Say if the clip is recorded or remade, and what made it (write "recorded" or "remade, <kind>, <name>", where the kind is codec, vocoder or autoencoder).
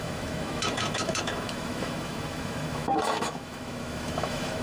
remade, autoencoder, DAC-VAE